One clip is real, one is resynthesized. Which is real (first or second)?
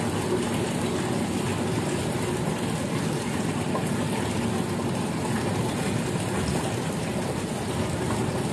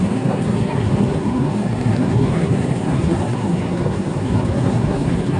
first